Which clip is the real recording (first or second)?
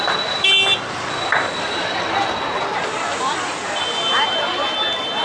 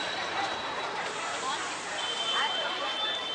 first